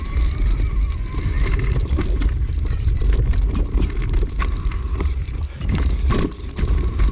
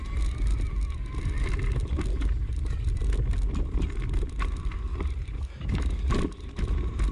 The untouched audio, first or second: second